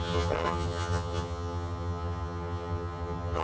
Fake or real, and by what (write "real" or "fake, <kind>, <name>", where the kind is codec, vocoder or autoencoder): fake, vocoder, HiFi-GAN